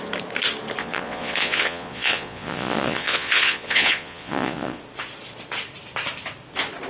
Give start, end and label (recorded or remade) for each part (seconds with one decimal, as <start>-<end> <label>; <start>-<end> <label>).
0.0-0.8 recorded; 0.8-4.8 remade; 4.8-6.9 recorded